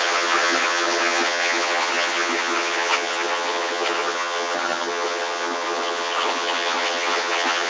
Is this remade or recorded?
remade